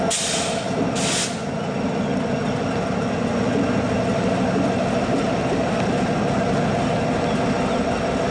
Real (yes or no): yes